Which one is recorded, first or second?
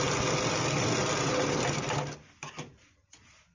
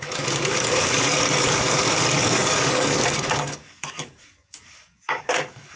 first